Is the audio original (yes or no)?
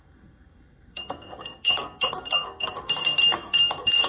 no